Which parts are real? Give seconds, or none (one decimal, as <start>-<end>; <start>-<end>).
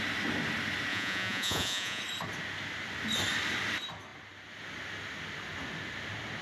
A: 0.0-0.9; 2.0-6.4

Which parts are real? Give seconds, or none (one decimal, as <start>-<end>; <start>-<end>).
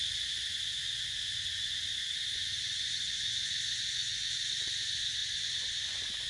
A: none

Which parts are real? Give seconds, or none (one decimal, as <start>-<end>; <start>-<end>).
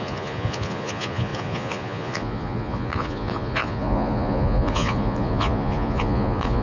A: none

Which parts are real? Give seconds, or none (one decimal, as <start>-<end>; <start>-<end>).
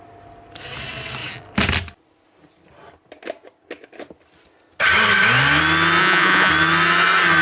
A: 0.0-6.0; 6.5-7.4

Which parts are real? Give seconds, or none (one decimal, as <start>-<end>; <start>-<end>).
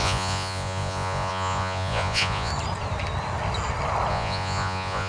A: 2.5-4.1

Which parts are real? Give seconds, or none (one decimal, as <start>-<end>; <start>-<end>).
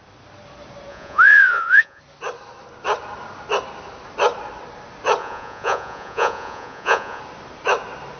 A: 0.0-0.9; 2.0-5.2; 7.2-8.2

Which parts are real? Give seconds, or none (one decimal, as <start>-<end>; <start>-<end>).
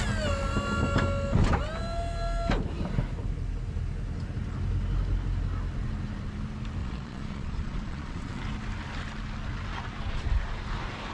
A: 0.0-6.8; 8.4-11.1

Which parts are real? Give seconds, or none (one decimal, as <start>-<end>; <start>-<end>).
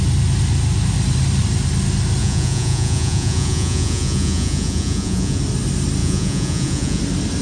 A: 0.0-2.2; 5.4-6.0; 7.0-7.4